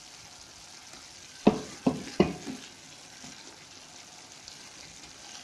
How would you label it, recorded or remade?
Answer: recorded